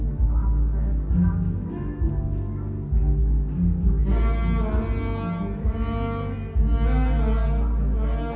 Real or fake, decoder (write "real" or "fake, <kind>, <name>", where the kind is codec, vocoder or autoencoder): real